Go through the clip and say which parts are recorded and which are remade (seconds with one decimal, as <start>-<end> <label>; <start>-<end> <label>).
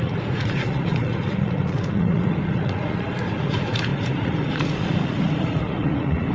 0.0-6.3 remade